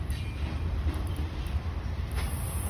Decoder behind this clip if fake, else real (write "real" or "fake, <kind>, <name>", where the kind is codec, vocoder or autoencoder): fake, vocoder, BigVGAN v2